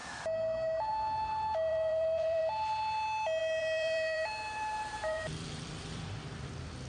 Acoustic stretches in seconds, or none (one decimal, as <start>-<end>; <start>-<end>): 0.0-1.7; 2.4-3.4; 5.7-6.9